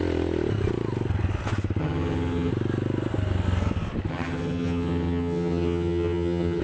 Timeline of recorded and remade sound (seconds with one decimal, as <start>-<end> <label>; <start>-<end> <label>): 0.0-1.8 recorded; 1.8-2.5 remade; 2.5-4.1 recorded; 4.1-6.6 remade

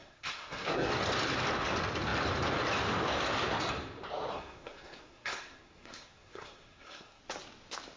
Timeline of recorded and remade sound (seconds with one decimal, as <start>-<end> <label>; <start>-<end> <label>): 0.0-0.9 remade; 0.9-4.3 recorded; 4.3-7.2 remade; 7.2-8.0 recorded

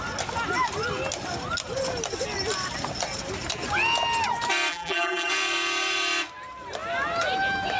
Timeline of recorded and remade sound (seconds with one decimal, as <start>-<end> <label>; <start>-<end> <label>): 0.0-4.7 recorded; 4.7-5.3 remade; 5.3-7.8 recorded

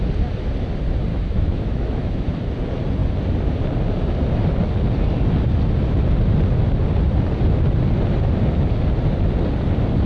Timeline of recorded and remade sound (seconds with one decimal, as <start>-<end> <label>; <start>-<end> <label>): 0.0-1.1 recorded; 1.1-2.4 remade; 2.4-10.1 recorded